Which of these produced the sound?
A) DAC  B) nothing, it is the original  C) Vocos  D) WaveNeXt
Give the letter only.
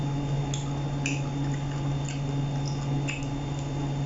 B